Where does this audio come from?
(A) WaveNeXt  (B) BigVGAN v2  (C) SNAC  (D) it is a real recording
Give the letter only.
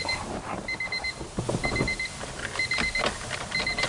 D